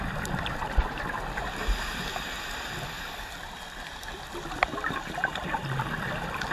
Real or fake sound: fake